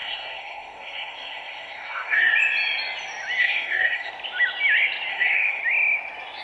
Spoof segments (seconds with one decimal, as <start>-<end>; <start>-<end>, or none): 0.0-2.3; 3.4-4.1; 5.1-5.6